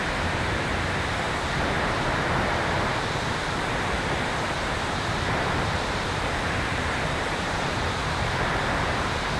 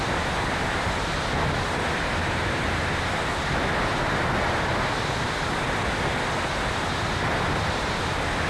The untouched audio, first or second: second